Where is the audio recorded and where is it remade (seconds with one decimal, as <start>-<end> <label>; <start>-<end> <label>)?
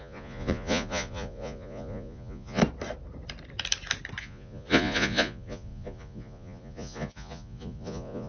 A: 0.0-2.6 remade; 2.6-4.2 recorded; 4.2-8.3 remade